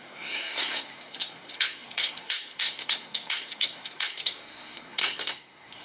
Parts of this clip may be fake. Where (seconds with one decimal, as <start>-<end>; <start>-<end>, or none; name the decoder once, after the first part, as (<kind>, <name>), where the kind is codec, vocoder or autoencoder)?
0.0-5.8 (codec, SNAC)